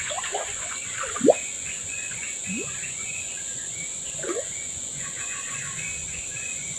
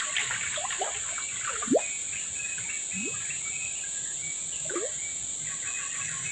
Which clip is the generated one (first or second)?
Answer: first